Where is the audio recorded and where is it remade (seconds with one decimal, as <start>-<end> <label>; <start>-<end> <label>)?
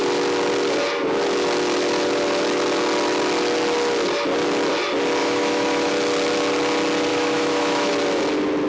0.0-5.2 recorded; 5.2-5.9 remade; 5.9-7.1 recorded; 7.1-7.9 remade; 7.9-8.7 recorded